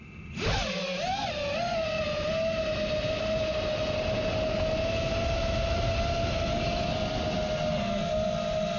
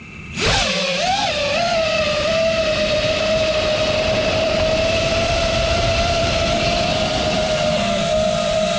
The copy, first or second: second